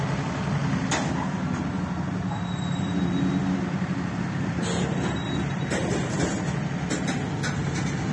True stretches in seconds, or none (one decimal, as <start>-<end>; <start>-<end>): 0.0-8.1